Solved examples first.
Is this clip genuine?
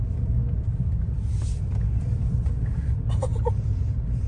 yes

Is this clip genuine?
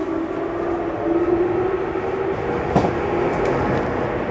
yes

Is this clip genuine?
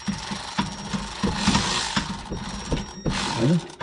yes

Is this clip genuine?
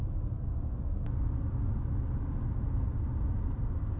yes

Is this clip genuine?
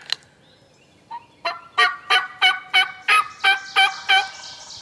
yes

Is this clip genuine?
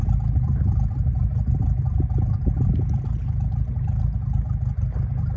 yes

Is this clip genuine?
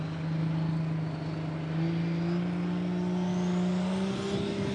yes